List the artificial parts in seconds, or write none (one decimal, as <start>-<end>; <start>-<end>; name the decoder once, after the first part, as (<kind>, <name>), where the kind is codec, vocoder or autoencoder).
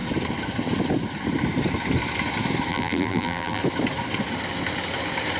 2.7-3.6 (vocoder, BigVGAN v2)